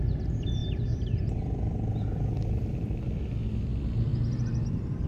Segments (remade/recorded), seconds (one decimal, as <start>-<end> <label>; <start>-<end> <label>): 0.0-5.1 recorded